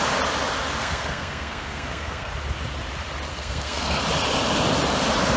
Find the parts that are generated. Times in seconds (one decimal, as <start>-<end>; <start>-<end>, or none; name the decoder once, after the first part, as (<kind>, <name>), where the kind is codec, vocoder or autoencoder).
0.8-2.3 (codec, SNAC); 3.3-4.0